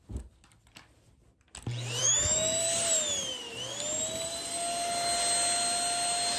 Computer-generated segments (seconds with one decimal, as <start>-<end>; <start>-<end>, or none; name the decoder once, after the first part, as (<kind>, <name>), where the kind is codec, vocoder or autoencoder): 2.0-2.6 (autoencoder, DAC-VAE)